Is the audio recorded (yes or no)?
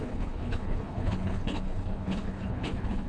no